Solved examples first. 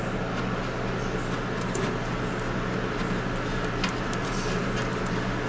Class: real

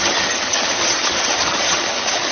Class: fake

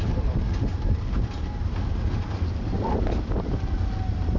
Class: real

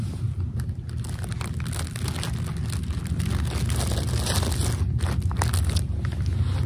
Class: real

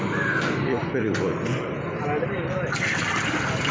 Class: real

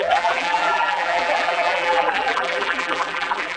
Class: fake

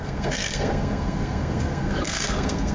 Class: fake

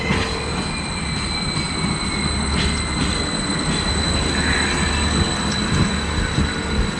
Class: real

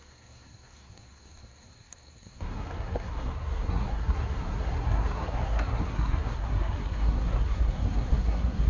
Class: fake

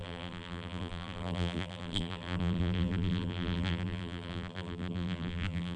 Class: fake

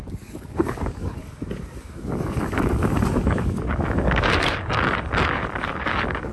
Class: fake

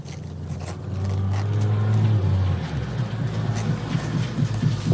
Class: real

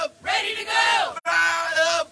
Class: real